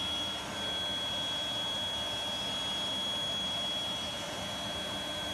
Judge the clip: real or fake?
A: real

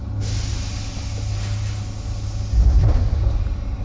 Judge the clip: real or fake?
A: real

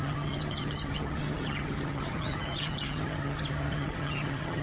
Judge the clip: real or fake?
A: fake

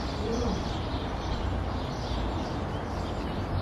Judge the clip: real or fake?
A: real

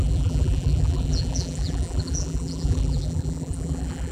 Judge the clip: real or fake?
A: fake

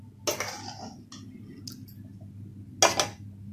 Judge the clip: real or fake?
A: real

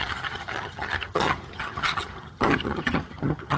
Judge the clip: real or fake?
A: fake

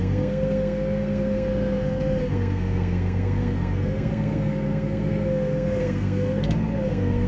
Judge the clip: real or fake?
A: fake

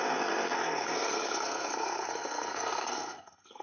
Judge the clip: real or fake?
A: fake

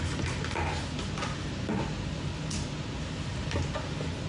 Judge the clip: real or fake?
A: real